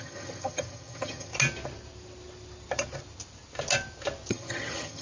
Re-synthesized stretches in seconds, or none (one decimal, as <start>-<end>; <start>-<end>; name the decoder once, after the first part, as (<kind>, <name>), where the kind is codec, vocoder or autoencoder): 0.0-1.3 (vocoder, HiFi-GAN); 4.3-5.0